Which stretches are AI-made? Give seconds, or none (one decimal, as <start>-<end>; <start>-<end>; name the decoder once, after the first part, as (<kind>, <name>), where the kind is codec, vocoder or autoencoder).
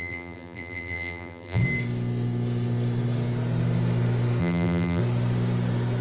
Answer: 0.0-1.6 (vocoder, BigVGAN v2); 4.4-5.0